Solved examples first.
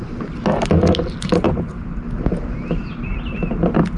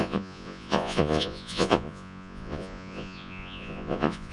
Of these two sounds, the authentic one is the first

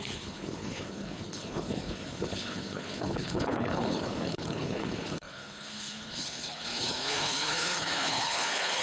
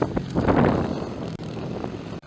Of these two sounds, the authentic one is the second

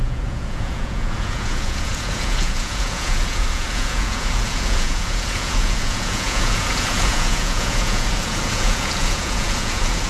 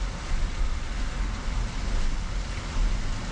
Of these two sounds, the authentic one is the second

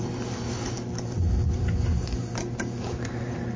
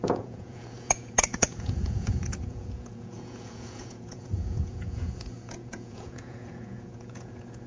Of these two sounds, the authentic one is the first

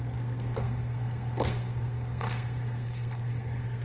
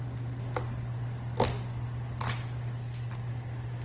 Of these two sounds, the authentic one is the second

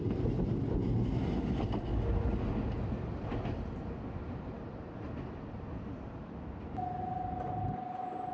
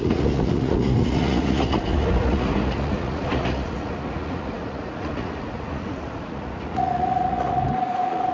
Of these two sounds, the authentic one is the first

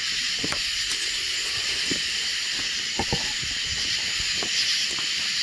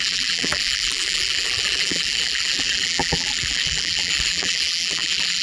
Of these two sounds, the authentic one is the first